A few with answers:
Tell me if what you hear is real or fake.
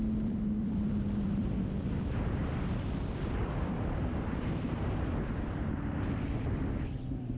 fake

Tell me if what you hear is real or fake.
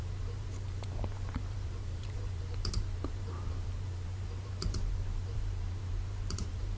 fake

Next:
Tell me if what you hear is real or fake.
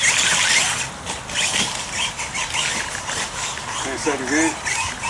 real